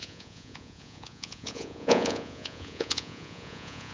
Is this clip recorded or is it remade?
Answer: remade